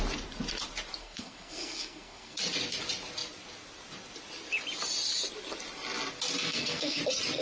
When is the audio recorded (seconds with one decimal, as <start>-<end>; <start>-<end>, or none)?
0.0-1.0; 2.4-6.4; 7.0-7.4